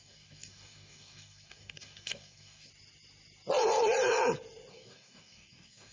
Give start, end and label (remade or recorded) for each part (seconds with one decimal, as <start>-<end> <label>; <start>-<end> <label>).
0.0-2.7 remade; 2.7-4.7 recorded; 4.7-5.9 remade